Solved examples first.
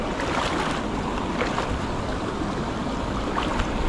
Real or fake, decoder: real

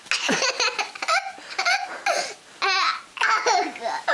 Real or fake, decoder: real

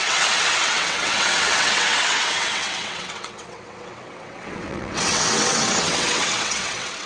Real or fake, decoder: fake, vocoder, WaveNeXt